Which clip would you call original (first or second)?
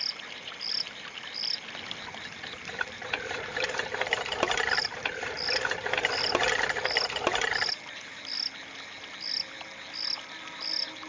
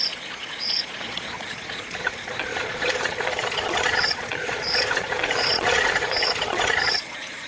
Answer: first